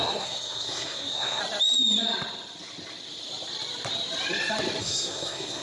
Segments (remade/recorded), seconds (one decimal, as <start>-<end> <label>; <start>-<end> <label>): 0.0-1.4 remade; 1.4-4.8 recorded; 4.8-5.6 remade